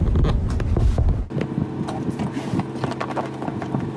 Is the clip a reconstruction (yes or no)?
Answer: no